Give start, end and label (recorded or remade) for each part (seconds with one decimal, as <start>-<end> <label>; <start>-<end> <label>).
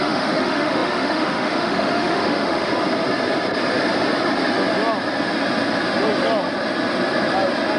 0.0-2.7 remade; 2.7-7.8 recorded